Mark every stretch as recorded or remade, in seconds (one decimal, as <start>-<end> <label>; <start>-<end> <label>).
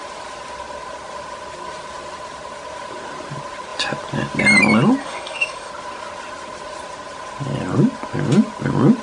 0.0-5.0 recorded; 5.0-5.7 remade; 5.7-9.0 recorded